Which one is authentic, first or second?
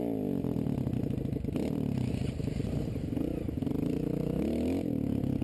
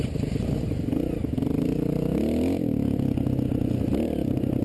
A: second